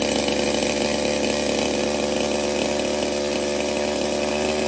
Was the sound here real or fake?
real